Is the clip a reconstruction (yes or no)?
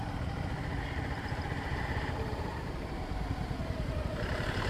yes